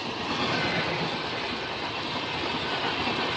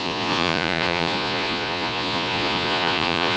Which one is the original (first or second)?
first